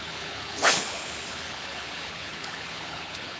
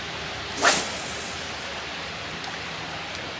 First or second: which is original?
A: second